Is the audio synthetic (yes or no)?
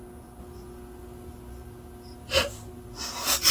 no